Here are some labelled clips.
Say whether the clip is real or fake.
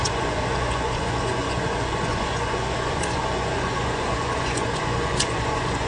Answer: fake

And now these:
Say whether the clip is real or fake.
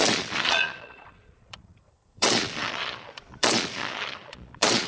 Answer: fake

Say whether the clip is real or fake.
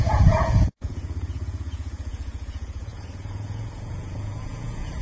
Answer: fake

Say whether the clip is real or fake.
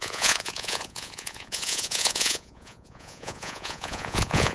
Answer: fake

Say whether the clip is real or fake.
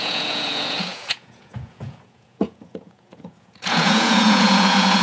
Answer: fake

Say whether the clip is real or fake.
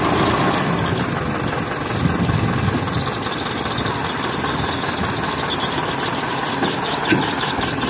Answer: real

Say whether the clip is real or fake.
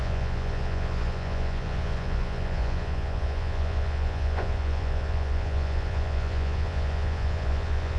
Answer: fake